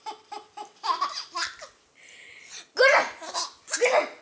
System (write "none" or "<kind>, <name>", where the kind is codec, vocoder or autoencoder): none